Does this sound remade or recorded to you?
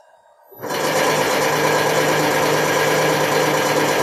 recorded